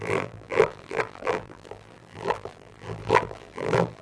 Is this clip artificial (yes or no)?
yes